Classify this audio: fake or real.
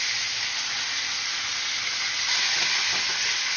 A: real